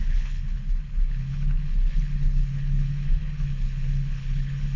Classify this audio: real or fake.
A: fake